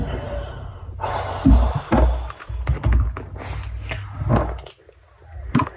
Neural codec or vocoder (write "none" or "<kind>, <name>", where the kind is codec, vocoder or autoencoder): none